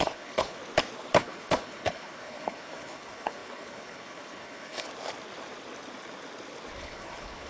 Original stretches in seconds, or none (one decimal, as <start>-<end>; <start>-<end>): 0.6-1.2; 4.9-6.8